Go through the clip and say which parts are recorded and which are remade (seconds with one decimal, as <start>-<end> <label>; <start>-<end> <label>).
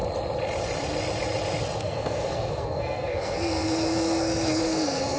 0.0-1.8 recorded; 1.8-5.2 remade